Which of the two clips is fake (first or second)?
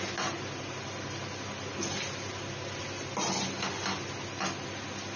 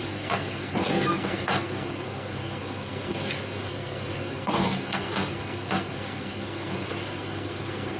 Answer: second